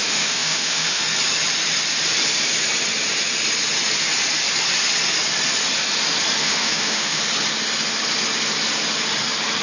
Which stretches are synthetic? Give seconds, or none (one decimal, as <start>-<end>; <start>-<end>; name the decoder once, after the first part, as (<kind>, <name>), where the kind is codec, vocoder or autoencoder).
0.0-1.0 (autoencoder, DAC-VAE); 6.4-7.2